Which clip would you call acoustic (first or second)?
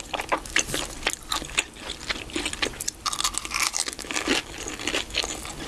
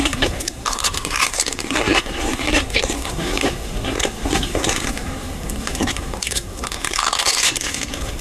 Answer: first